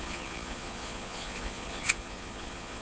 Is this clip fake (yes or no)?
yes